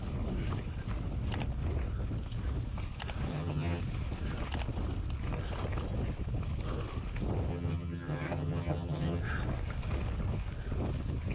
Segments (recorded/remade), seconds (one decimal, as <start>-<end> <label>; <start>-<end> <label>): 0.0-3.3 recorded; 3.3-3.8 remade; 3.8-7.5 recorded; 7.5-9.2 remade; 9.2-11.3 recorded